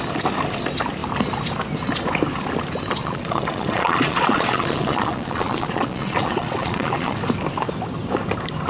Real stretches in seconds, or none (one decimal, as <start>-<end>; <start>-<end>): 0.0-3.0; 7.2-8.7